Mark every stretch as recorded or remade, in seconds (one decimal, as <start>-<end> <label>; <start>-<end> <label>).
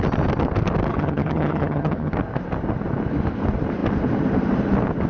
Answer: 0.0-0.9 recorded; 0.9-2.1 remade; 2.1-5.1 recorded